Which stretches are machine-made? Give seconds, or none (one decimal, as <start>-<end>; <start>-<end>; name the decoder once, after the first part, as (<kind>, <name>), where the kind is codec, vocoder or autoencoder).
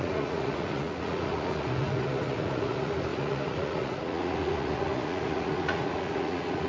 0.0-6.7 (vocoder, Vocos)